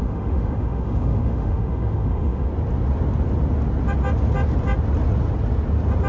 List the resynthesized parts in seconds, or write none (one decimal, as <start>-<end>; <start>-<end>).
0.0-2.5